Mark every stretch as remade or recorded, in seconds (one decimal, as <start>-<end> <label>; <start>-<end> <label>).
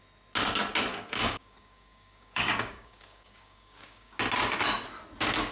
0.0-0.9 recorded; 0.9-4.2 remade; 4.2-5.5 recorded